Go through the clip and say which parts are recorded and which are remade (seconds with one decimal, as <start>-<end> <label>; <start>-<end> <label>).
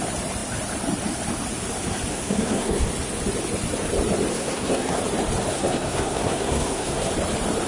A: 0.0-2.1 recorded; 2.1-2.9 remade; 2.9-4.3 recorded; 4.3-5.0 remade; 5.0-5.5 recorded; 5.5-7.1 remade; 7.1-7.7 recorded